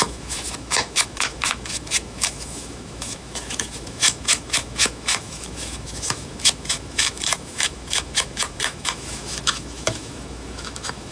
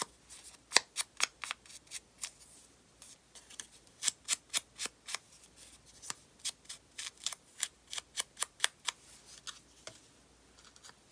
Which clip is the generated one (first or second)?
first